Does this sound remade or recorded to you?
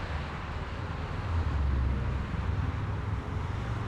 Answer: recorded